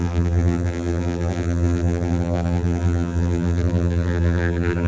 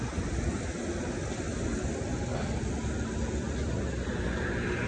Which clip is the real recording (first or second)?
second